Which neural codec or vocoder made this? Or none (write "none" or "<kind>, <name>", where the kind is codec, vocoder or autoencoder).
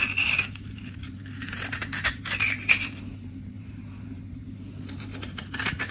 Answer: vocoder, BigVGAN v2